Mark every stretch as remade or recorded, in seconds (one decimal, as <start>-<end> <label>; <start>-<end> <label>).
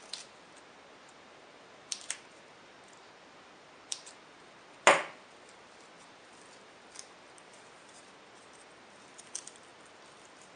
0.0-10.6 recorded